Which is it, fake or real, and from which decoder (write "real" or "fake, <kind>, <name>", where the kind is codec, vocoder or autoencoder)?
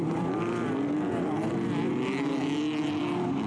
fake, vocoder, BigVGAN v2